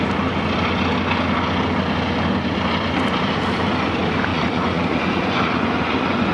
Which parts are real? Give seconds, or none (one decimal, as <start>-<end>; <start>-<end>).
0.0-4.3